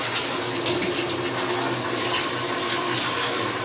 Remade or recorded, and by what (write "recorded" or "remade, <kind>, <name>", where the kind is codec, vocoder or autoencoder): recorded